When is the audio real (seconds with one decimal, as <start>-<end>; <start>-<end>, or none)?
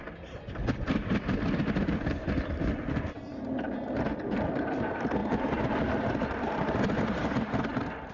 0.0-8.1